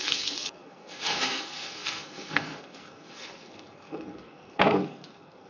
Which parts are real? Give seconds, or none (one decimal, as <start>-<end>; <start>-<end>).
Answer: none